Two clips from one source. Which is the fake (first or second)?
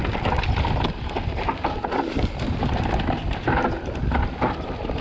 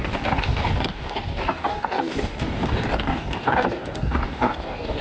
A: second